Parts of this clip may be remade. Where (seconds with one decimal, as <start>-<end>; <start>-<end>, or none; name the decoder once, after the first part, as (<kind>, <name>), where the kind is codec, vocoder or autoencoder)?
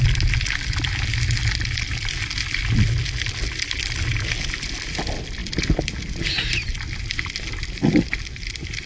none